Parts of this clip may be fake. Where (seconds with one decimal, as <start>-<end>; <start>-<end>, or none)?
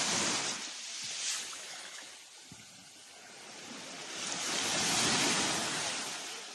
1.5-2.1